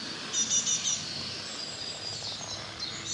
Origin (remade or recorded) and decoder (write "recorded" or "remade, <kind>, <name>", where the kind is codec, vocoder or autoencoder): recorded